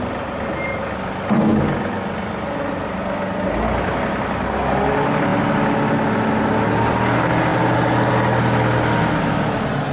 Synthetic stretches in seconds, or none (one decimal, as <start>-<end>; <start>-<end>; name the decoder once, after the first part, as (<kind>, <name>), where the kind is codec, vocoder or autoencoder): none